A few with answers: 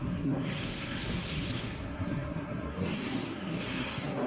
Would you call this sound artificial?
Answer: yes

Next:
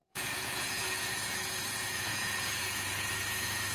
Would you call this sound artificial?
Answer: yes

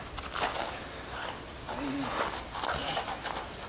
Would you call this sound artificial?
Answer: no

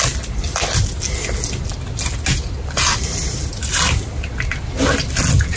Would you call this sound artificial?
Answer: no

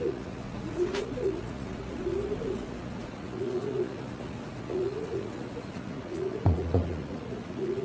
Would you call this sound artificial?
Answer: yes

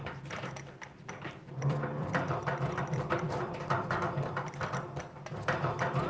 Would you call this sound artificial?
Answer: yes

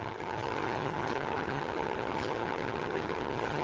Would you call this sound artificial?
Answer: yes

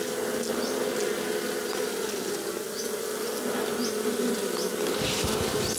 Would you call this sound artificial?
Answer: no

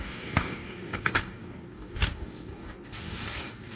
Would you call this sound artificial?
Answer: yes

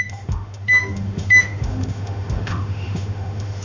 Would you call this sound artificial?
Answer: yes